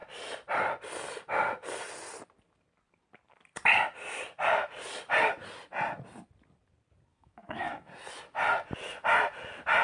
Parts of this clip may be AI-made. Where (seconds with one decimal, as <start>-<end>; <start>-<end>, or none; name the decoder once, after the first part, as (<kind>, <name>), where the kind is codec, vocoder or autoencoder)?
7.1-7.9 (autoencoder, DAC-VAE)